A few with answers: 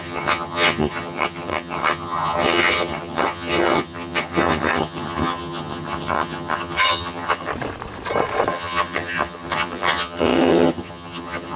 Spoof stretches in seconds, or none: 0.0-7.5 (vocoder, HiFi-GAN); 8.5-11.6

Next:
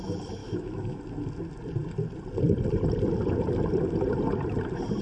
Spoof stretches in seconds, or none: 0.4-1.0 (autoencoder, DAC-VAE)

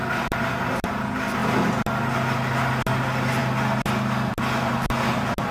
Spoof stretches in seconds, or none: none

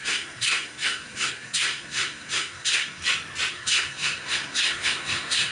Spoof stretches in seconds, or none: 0.0-3.0 (codec, SNAC); 3.5-5.5

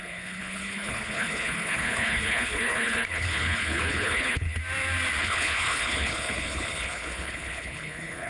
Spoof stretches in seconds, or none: 0.0-4.6 (codec, HILCodec); 5.2-8.3